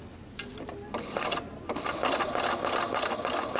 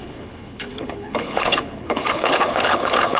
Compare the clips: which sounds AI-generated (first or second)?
second